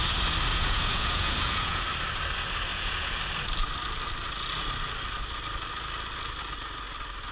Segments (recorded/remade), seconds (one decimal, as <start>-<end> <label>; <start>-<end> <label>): 0.0-0.5 recorded; 0.5-1.8 remade; 1.8-2.7 recorded; 2.7-3.2 remade; 3.2-7.3 recorded